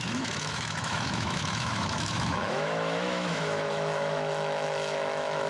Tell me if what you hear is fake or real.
fake